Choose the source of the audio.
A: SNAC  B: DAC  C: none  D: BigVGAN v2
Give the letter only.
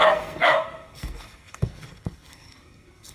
A